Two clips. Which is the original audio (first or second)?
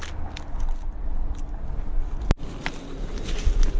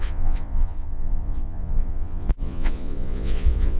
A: first